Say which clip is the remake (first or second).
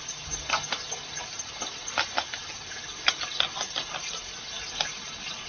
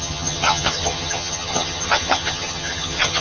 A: second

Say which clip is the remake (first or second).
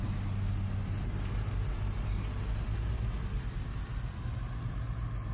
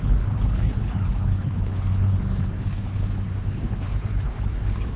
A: second